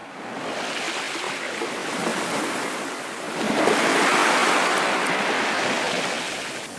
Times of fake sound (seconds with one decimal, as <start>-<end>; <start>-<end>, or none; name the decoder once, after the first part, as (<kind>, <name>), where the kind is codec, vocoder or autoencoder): none